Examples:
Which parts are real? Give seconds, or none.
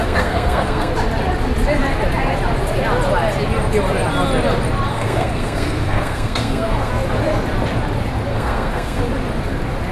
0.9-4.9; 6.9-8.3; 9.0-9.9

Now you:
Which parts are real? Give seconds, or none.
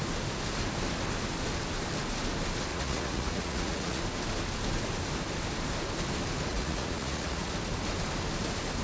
0.0-2.7; 4.0-6.5; 7.5-8.8